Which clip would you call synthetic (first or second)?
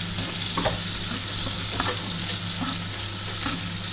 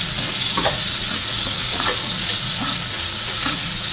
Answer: second